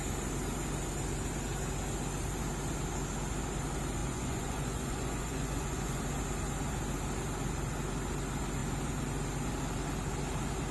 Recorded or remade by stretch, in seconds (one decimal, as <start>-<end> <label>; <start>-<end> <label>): 0.0-4.0 recorded; 4.0-6.0 remade; 6.0-10.7 recorded